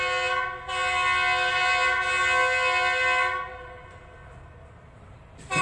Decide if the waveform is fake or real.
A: real